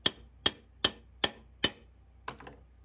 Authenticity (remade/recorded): recorded